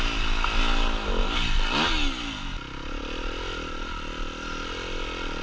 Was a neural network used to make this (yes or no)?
no